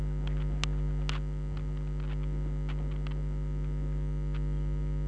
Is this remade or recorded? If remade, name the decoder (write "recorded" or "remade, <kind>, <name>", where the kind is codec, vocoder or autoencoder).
recorded